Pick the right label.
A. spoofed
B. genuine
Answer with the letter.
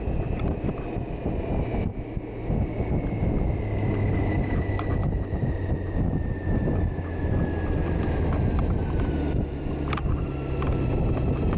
B